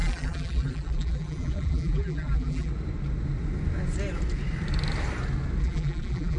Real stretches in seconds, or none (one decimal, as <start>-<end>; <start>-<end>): 2.7-5.6